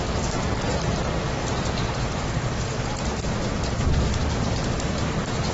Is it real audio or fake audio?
real